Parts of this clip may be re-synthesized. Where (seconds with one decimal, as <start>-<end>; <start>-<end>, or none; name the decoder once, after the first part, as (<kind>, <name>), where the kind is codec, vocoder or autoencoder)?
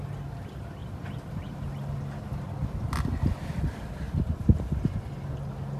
none